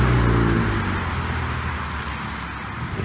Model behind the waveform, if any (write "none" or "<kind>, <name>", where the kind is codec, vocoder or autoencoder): none